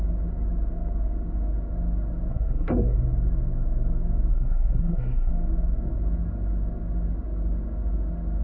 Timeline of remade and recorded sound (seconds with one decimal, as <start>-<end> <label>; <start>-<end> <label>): 0.0-2.3 recorded; 2.3-3.0 remade; 3.0-4.3 recorded; 4.3-5.3 remade; 5.3-8.4 recorded